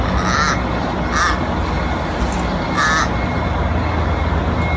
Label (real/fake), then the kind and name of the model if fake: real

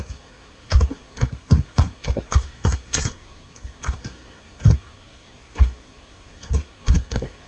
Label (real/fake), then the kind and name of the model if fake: fake, codec, SNAC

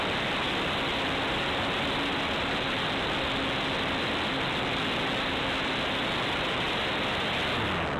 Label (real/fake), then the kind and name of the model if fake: real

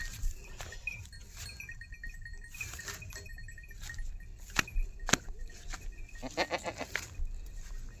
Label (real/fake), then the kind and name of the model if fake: real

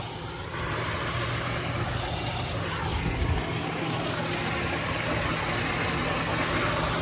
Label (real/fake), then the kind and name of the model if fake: real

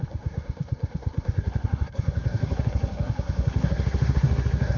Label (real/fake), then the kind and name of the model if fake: fake, codec, SNAC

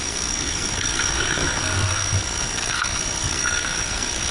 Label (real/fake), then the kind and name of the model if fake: fake, codec, SNAC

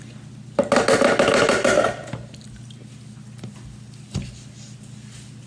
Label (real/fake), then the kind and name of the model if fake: real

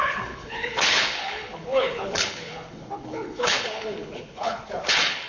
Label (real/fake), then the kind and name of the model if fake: fake, codec, HILCodec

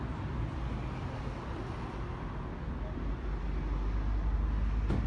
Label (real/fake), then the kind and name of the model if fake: real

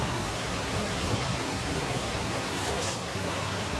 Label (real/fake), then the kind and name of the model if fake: fake, codec, SNAC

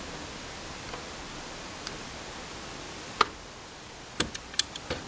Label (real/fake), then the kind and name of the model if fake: real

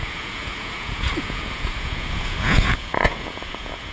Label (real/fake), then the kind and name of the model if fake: fake, vocoder, Vocos